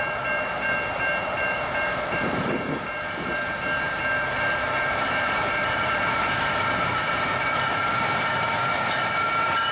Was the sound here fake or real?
fake